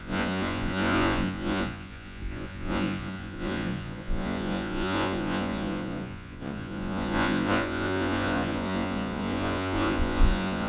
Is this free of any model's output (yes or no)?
no